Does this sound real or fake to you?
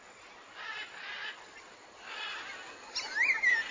real